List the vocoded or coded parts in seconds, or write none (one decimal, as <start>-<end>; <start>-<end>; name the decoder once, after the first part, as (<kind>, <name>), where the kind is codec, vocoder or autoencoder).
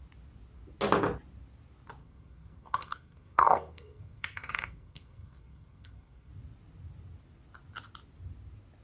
2.0-6.3 (codec, SNAC)